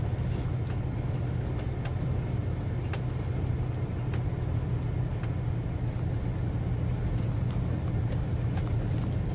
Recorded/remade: recorded